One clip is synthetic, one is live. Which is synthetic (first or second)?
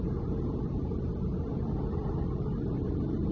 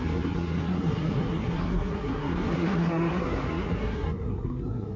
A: second